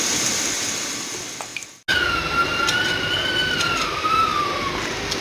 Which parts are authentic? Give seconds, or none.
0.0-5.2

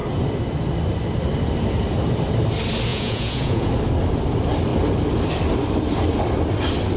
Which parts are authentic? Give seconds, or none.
0.0-2.9; 3.7-7.0

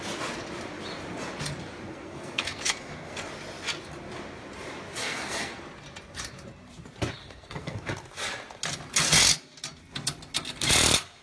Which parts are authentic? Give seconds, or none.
0.0-1.9; 3.3-5.0; 5.6-7.2; 7.9-11.2

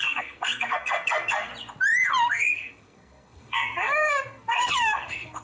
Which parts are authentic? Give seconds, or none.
1.5-2.3

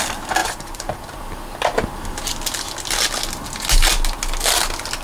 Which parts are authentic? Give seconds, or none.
0.0-0.4; 1.2-5.0